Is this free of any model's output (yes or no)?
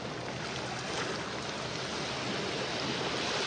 yes